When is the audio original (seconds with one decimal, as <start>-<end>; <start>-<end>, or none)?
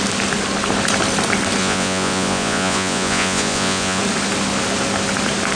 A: 0.0-1.6; 4.0-5.6